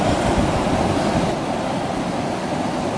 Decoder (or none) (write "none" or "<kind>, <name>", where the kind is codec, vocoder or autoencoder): none